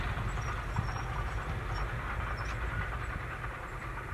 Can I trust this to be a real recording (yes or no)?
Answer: yes